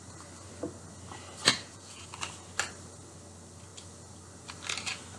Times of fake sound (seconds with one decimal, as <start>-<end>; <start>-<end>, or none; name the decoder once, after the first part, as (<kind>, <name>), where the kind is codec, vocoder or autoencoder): 1.5-2.0 (vocoder, Vocos)